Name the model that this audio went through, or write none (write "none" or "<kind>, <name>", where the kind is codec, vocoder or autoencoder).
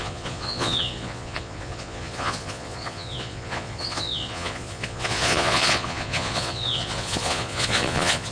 vocoder, Vocos